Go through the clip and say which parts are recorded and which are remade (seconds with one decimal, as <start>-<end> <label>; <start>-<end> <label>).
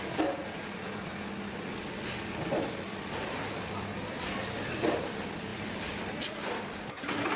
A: 0.0-7.4 recorded